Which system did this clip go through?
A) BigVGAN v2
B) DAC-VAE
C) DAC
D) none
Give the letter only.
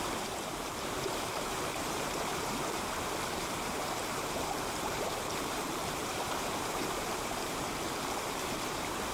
A